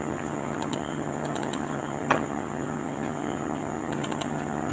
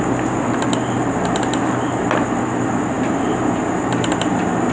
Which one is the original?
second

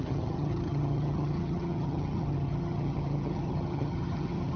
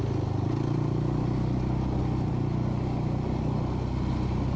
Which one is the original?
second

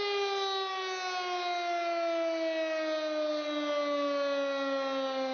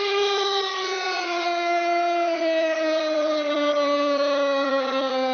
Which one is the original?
first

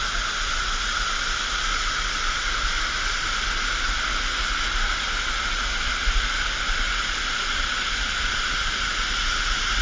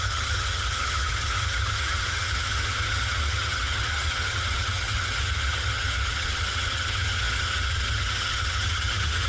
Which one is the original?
first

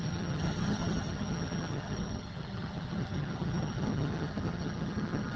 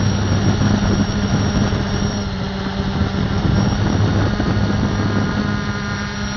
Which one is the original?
second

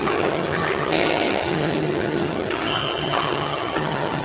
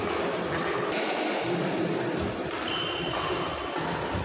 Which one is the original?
second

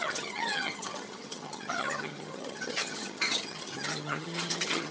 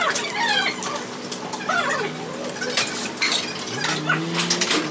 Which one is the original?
second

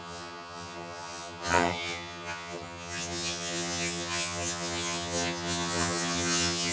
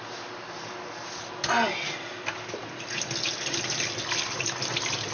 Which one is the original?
second